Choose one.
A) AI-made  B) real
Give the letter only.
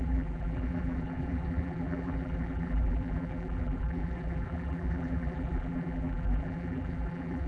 A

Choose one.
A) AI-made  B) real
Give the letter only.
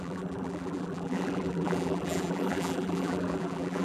A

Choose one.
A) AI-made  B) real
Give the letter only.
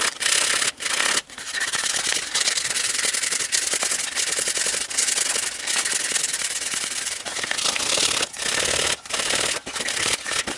A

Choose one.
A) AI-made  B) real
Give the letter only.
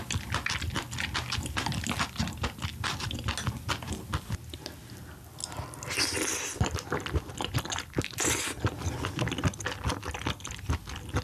B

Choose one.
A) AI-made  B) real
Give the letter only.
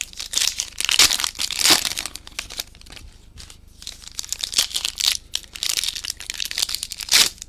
B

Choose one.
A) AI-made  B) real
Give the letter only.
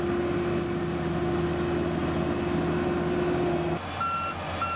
B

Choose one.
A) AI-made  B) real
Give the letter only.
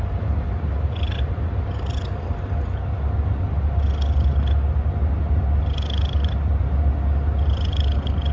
B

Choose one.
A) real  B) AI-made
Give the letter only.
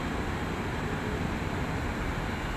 B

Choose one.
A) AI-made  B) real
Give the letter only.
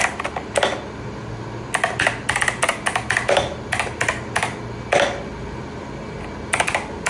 B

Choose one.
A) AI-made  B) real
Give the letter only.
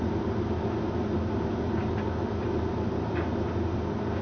B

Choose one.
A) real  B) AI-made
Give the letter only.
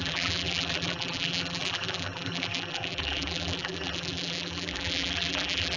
B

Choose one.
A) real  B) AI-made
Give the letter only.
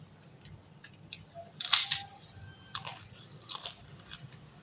B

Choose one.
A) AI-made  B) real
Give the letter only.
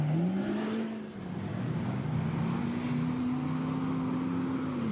B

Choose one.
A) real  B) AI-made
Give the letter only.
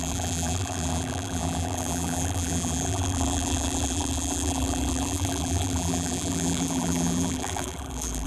B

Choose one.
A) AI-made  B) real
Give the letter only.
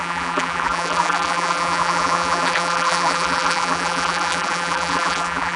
A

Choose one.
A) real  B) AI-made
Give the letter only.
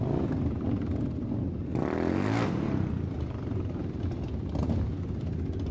A